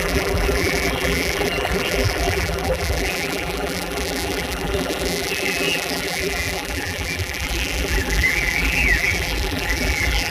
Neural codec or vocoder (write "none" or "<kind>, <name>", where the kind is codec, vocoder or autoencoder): vocoder, BigVGAN v2